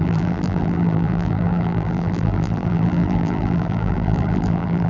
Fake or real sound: fake